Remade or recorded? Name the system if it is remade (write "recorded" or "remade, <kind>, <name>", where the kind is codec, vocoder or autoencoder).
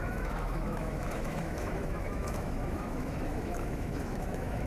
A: remade, autoencoder, DAC-VAE